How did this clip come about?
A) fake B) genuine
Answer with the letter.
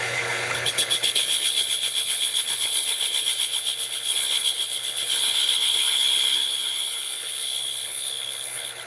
A